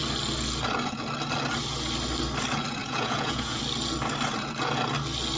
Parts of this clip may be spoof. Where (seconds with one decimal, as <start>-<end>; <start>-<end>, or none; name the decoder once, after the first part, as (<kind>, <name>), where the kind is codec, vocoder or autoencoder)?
2.8-3.6 (vocoder, Vocos)